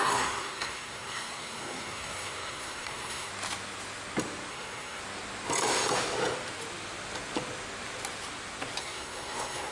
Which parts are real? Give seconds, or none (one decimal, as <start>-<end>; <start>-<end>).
3.3-4.5; 5.0-8.8